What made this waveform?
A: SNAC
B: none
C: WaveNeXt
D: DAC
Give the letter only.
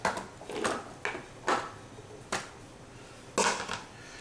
B